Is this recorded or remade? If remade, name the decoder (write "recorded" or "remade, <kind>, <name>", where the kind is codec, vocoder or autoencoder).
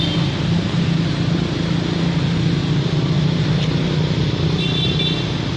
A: recorded